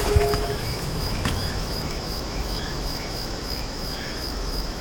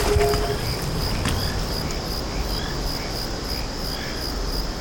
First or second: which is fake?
first